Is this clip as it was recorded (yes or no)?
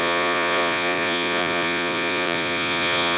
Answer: no